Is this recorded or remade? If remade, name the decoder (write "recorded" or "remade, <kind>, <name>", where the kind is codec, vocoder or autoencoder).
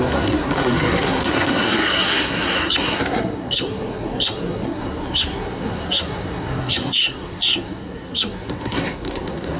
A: remade, codec, SNAC